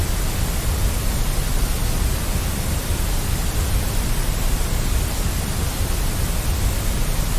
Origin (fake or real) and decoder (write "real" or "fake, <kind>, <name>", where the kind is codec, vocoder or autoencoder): real